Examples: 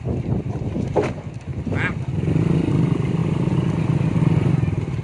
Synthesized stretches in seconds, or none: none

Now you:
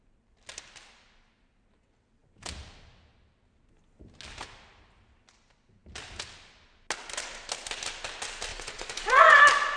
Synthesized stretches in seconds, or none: 8.5-9.4 (vocoder, Vocos)

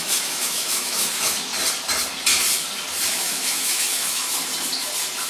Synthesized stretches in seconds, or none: 0.0-1.5 (autoencoder, DAC-VAE); 3.1-4.3

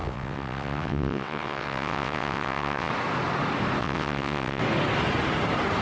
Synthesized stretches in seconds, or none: 0.0-2.9 (vocoder, WaveNeXt); 3.8-4.6

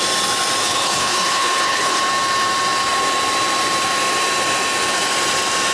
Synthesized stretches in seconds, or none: 0.6-2.0 (codec, HILCodec)

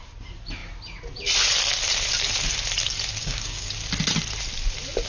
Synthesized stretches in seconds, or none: 3.2-3.7 (codec, DAC)

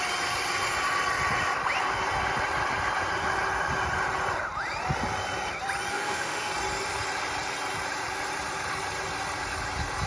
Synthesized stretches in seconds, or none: 5.9-6.5 (autoencoder, DAC-VAE)